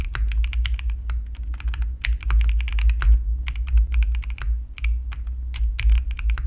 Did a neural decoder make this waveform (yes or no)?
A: no